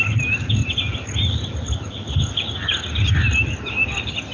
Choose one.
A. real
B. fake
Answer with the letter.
A